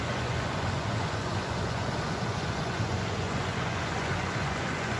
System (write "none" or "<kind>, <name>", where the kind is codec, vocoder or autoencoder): vocoder, Vocos